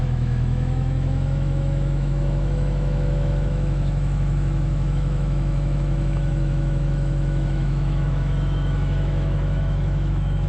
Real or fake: fake